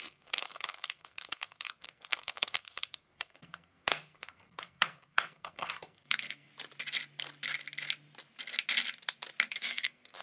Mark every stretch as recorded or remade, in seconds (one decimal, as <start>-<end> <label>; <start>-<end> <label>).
0.0-6.5 remade; 6.5-9.5 recorded; 9.5-10.2 remade